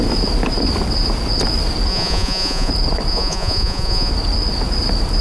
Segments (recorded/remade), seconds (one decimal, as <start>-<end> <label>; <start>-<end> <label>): 0.0-1.9 recorded; 1.9-2.7 remade; 2.7-3.1 recorded; 3.1-4.1 remade; 4.1-5.2 recorded